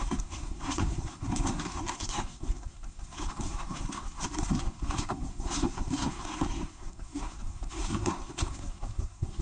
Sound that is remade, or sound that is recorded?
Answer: remade